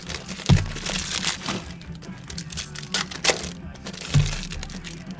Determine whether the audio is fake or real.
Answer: real